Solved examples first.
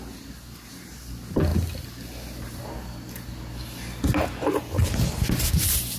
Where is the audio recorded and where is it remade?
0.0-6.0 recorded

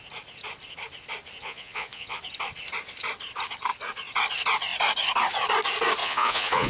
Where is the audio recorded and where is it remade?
0.0-1.4 recorded; 1.4-2.2 remade; 2.2-6.0 recorded; 6.0-6.7 remade

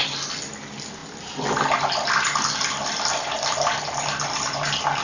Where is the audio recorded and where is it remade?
0.0-5.0 recorded